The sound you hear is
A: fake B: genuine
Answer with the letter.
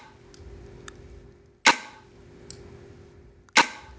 B